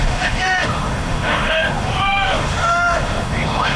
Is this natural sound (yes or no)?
no